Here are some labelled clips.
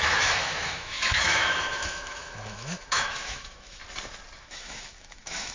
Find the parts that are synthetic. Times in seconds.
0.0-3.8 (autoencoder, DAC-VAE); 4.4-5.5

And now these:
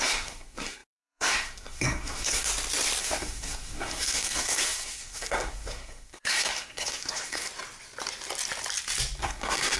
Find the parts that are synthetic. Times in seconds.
0.0-2.5 (codec, SNAC); 3.0-7.5; 9.2-9.8

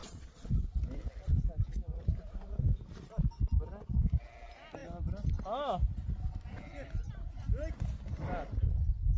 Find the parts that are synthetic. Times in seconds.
0.0-0.5 (vocoder, Vocos)

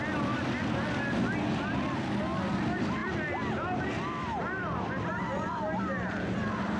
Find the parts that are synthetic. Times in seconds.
none

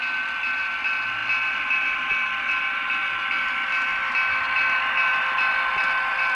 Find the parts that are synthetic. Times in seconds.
none

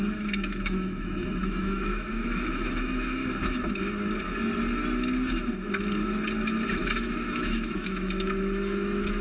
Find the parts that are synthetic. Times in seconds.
0.0-3.2 (autoencoder, DAC-VAE); 6.7-9.2